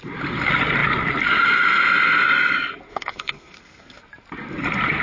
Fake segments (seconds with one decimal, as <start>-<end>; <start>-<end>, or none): 2.9-4.0